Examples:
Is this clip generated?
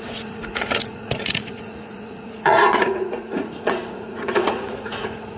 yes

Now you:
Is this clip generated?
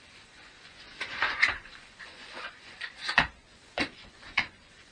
yes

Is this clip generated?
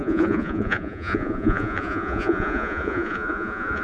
yes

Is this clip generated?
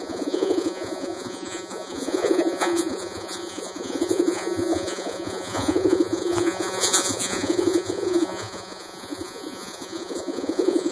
yes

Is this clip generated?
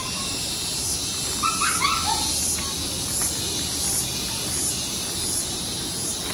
no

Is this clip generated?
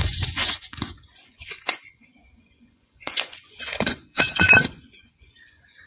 yes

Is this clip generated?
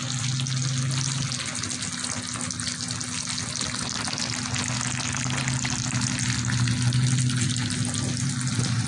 no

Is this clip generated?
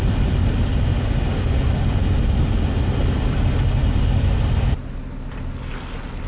no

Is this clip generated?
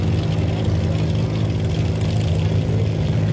no